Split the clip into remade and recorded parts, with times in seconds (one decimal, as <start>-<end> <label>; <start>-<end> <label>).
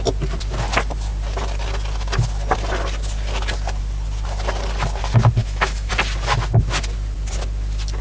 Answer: 0.0-5.4 recorded; 5.4-5.9 remade; 5.9-8.0 recorded